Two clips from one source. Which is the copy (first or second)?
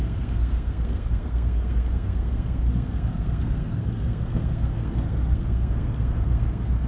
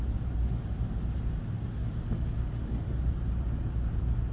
first